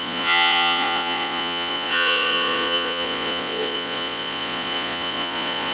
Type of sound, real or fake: fake